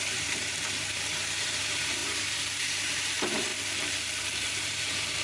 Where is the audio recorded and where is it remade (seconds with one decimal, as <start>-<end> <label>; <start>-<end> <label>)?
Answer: 0.0-3.5 remade; 3.5-4.6 recorded; 4.6-5.2 remade